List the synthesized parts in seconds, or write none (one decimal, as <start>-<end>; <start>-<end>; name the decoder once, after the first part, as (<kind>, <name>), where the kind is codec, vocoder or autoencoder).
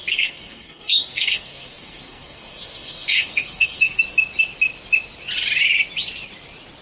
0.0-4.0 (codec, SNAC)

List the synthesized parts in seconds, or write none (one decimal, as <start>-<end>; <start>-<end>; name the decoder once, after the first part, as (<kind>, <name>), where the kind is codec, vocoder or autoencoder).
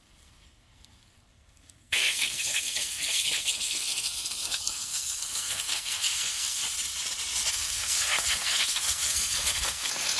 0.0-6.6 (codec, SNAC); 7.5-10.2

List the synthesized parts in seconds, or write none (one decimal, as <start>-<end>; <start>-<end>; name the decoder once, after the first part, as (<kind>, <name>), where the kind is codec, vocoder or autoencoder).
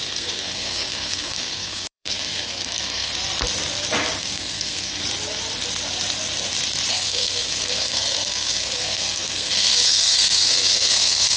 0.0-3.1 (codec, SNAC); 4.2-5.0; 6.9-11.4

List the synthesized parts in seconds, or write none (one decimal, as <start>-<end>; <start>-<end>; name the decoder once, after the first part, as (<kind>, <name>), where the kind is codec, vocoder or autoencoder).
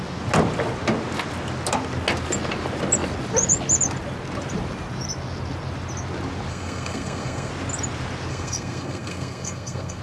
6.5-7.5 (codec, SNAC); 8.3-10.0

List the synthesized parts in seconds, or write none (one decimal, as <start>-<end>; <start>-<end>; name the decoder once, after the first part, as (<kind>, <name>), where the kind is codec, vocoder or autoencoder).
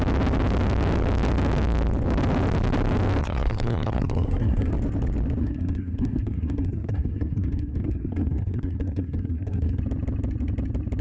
3.2-4.7 (codec, SNAC); 5.4-9.8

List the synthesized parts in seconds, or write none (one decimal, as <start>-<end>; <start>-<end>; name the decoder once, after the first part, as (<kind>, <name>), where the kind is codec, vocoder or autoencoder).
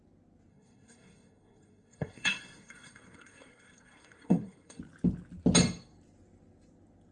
0.5-4.8 (codec, SNAC)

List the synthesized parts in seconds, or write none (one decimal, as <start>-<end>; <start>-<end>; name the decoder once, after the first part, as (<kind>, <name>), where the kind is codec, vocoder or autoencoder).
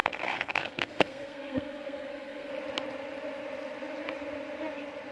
0.0-2.5 (codec, SNAC)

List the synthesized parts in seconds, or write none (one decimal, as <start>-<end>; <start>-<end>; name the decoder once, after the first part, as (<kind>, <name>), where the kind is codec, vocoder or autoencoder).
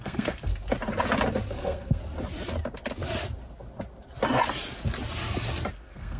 0.0-0.5 (codec, SNAC); 1.5-2.0; 5.7-6.2